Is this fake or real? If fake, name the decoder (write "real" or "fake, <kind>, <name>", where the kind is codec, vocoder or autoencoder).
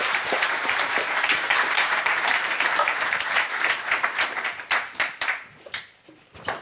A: fake, vocoder, BigVGAN v2